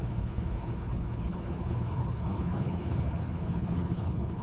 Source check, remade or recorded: remade